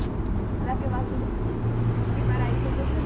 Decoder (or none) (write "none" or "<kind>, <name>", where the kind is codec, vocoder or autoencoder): none